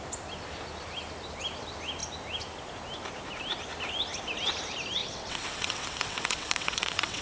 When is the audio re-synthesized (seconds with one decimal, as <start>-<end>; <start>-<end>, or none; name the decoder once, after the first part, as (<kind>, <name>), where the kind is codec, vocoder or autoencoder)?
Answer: 5.0-7.2 (vocoder, WaveNeXt)